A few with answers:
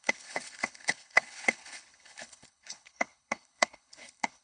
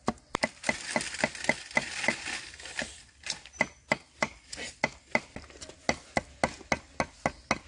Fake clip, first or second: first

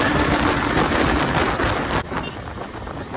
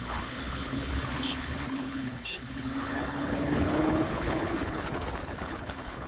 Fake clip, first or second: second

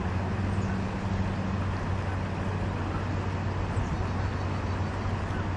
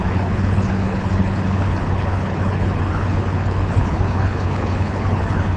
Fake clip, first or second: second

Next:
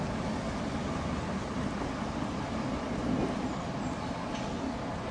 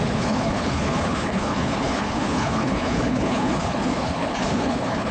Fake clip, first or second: second